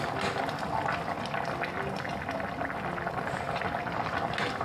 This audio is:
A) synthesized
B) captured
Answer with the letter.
B